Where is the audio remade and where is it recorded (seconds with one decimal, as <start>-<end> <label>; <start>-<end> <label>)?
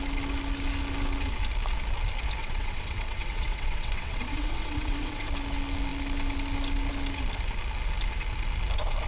0.0-2.4 recorded; 2.4-5.3 remade; 5.3-9.1 recorded